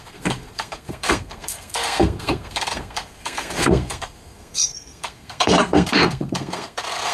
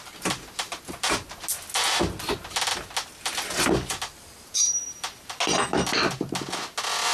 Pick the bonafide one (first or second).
second